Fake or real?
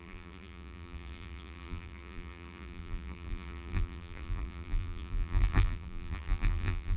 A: fake